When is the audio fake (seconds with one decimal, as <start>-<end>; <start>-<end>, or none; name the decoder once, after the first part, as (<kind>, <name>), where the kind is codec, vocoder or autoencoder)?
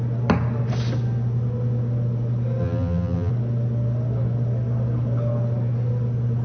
2.6-3.3 (vocoder, BigVGAN v2)